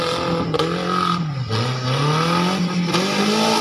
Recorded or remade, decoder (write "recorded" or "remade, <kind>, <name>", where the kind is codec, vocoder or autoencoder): recorded